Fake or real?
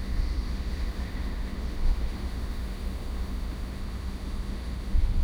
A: fake